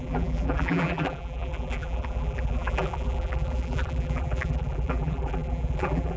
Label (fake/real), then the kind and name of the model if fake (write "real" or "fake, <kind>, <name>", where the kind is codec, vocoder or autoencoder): fake, vocoder, BigVGAN v2